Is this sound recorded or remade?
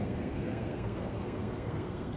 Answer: remade